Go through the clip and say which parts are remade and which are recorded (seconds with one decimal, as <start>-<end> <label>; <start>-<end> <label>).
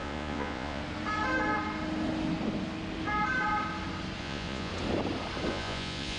0.0-0.8 remade; 0.8-4.2 recorded; 4.2-4.7 remade; 4.7-5.5 recorded; 5.5-6.2 remade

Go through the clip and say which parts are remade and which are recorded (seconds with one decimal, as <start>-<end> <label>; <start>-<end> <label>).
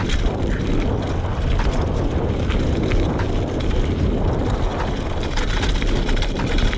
0.0-6.8 recorded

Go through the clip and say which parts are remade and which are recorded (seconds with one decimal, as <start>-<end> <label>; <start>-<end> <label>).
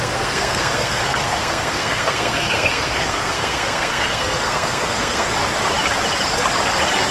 0.0-5.3 remade; 5.3-7.1 recorded